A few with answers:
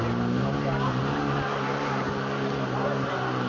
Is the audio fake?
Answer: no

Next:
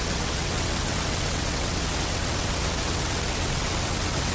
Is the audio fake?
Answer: yes